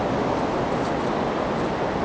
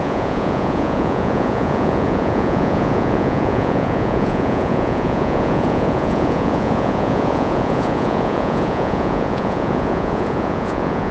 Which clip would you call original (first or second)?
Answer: first